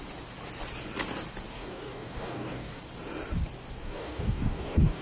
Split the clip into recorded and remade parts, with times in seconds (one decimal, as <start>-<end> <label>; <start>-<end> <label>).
0.0-1.5 recorded; 1.5-2.8 remade; 2.8-3.8 recorded; 3.8-5.0 remade